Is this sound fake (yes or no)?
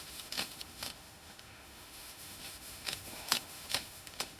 yes